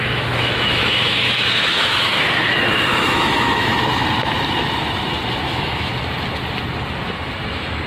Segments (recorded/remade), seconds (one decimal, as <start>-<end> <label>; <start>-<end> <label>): 0.0-3.7 remade; 3.7-5.5 recorded; 5.5-5.9 remade; 5.9-7.5 recorded; 7.5-7.9 remade